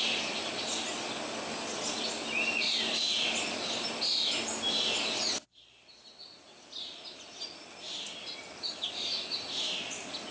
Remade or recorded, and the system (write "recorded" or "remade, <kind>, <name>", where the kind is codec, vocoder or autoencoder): recorded